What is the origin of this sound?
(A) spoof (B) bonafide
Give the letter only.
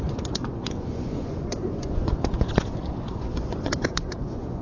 A